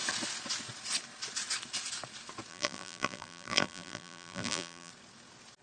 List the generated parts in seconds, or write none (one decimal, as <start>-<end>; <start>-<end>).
2.5-4.9